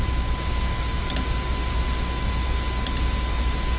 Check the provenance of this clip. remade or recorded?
recorded